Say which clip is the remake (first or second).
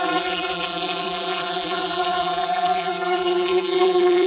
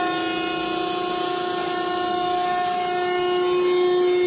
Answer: first